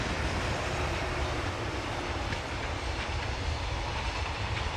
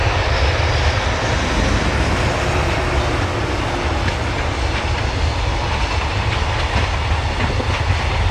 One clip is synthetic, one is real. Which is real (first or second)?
second